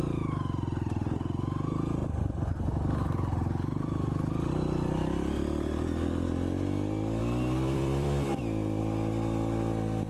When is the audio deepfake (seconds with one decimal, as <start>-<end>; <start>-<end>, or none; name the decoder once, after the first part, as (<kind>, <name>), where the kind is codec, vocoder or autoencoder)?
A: 2.0-4.5 (vocoder, BigVGAN v2); 7.2-8.8